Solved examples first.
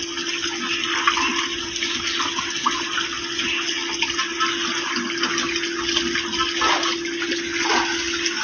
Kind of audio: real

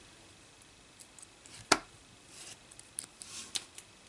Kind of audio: real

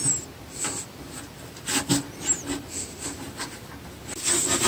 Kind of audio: real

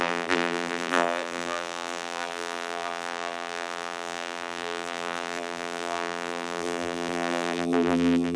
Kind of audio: fake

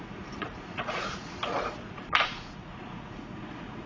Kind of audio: fake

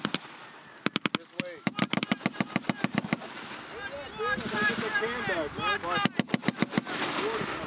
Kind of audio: real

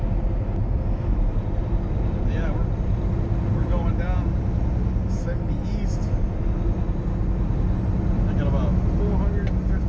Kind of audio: real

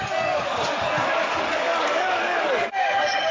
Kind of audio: fake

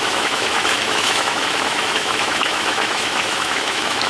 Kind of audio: fake